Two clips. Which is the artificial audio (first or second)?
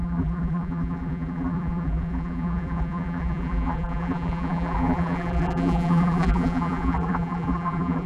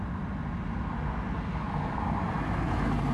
first